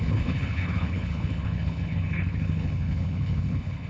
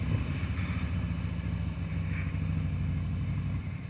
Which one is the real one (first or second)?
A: second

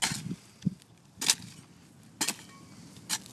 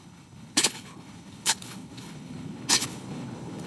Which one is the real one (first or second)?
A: first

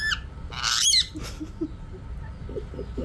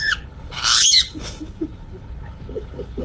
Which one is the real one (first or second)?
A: first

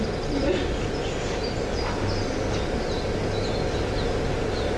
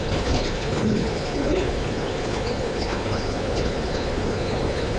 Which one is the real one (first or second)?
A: first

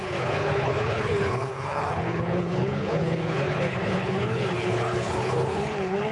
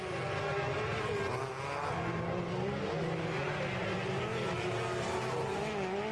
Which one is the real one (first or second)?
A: second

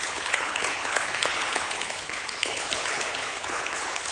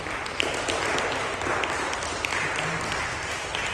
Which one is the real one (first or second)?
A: second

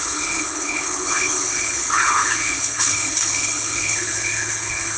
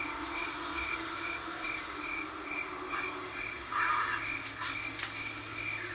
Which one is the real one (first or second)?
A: second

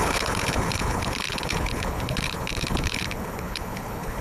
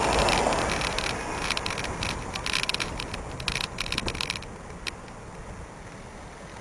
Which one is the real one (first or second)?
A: second